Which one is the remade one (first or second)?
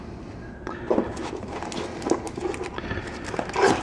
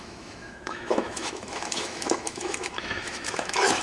second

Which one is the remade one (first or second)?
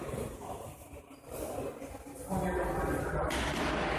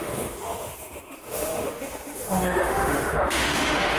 second